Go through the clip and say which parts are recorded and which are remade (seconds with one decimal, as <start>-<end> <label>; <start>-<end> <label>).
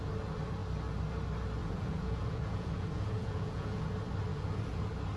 0.0-1.6 recorded; 1.6-3.8 remade; 3.8-4.3 recorded; 4.3-4.8 remade; 4.8-5.2 recorded